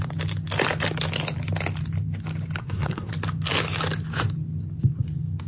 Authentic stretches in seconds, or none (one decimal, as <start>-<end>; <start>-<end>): 0.0-2.6; 3.1-5.5